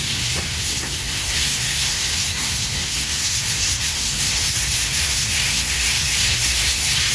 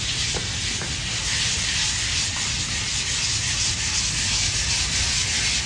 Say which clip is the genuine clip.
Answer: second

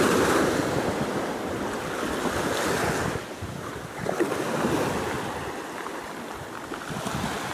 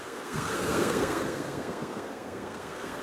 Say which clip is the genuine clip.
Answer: first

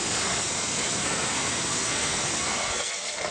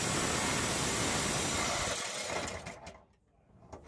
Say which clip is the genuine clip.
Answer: second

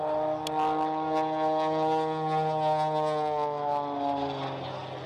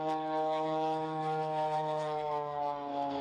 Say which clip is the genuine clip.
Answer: first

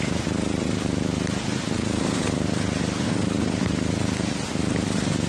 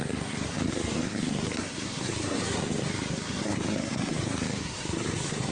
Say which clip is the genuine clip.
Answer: first